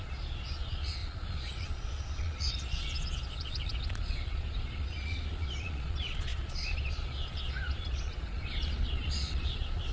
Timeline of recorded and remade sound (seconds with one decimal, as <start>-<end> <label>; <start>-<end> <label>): 0.0-9.9 remade